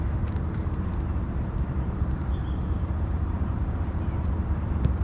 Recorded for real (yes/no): no